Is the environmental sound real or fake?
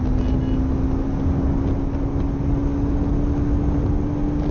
real